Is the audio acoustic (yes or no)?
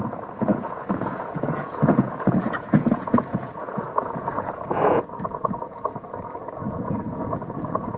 no